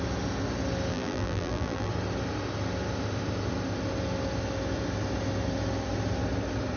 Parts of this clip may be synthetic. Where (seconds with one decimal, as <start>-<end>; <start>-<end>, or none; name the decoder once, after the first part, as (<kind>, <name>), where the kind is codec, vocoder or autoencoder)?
0.9-1.9 (vocoder, BigVGAN v2)